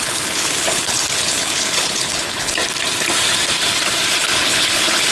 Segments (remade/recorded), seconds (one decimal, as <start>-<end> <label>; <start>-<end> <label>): 0.0-2.6 remade; 2.6-4.2 recorded; 4.2-5.1 remade

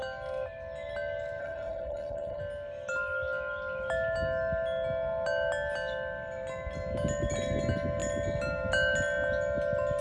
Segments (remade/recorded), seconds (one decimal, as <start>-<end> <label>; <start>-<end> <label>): 0.0-1.4 recorded; 1.4-2.4 remade; 2.4-10.0 recorded

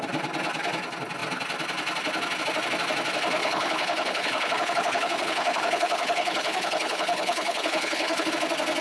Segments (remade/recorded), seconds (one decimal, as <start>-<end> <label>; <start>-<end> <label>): 0.0-3.4 recorded; 3.4-8.3 remade; 8.3-8.8 recorded

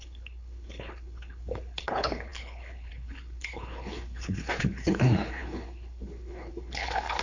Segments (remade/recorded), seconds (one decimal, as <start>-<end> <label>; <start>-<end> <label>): 0.0-7.2 remade

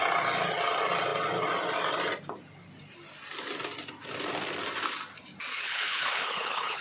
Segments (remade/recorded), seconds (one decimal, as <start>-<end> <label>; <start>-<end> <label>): 0.0-5.5 recorded; 5.5-6.8 remade

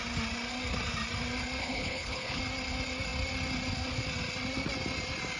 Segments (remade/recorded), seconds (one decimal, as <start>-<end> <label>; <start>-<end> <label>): 0.0-1.6 recorded; 1.6-2.4 remade; 2.4-5.4 recorded

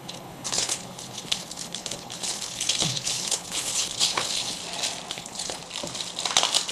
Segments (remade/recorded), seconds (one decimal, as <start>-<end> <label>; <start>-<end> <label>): 0.0-4.6 remade; 4.6-5.1 recorded; 5.1-5.6 remade; 5.6-6.7 recorded